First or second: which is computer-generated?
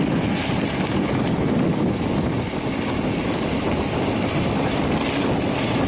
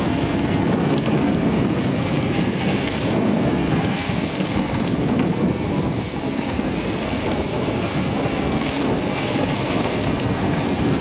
second